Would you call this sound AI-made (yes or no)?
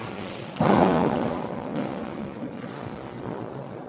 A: yes